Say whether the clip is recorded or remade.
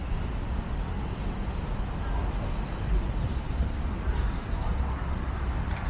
recorded